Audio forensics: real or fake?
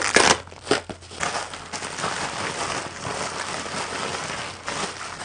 real